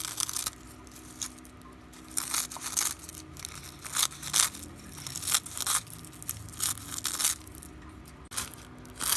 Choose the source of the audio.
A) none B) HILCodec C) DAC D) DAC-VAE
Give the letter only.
A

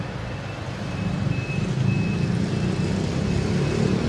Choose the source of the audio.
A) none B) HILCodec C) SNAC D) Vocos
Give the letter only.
A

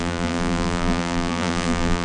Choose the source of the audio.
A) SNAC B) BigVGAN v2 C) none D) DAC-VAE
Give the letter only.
B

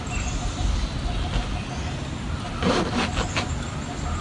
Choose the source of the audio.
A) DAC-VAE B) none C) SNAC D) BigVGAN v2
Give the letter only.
B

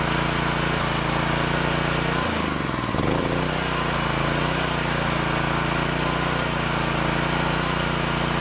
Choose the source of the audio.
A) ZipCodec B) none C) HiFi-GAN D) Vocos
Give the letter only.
B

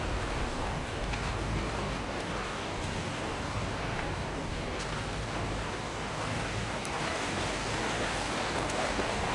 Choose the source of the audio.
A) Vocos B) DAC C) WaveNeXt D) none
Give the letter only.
B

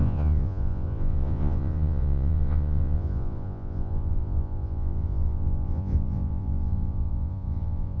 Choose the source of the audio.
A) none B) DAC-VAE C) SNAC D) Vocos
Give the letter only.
D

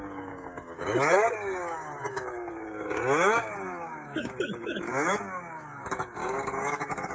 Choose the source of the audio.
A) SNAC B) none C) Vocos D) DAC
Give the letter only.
D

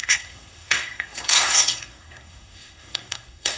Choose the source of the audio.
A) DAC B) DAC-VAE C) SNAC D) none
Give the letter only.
C